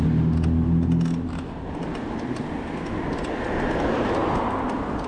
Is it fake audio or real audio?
real